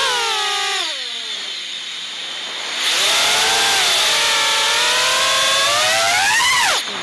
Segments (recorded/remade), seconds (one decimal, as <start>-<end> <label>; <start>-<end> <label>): 0.0-7.0 recorded

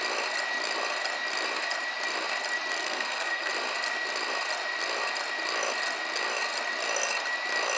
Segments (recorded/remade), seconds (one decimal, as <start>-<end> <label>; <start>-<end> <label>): 0.0-2.8 recorded; 2.8-3.5 remade; 3.5-7.8 recorded